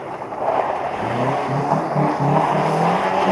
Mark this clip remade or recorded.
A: remade